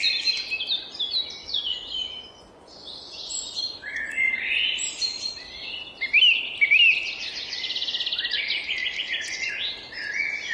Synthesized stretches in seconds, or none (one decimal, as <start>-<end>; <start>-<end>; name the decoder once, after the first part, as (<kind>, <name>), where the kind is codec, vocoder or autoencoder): 1.4-4.9 (vocoder, Vocos); 8.8-9.5